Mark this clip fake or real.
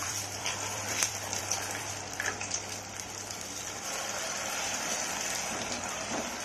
fake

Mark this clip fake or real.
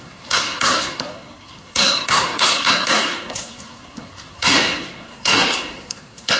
fake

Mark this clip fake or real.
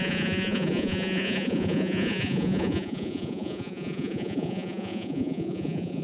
fake